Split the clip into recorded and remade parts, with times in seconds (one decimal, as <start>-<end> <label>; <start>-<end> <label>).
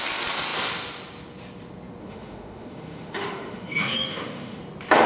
0.0-2.0 recorded; 2.0-4.6 remade; 4.6-5.1 recorded